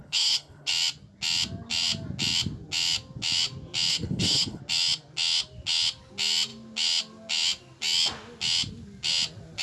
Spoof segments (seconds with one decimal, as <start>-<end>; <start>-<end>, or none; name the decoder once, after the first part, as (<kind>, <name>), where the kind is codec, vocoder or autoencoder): 0.0-0.7 (codec, HILCodec); 3.9-4.6